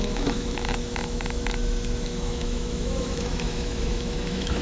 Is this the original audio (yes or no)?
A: no